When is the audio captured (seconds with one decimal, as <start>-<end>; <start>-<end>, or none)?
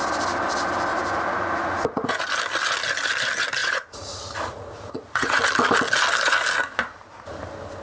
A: 0.0-0.9; 2.2-3.6; 5.4-7.8